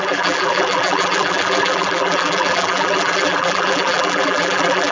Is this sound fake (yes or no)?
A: yes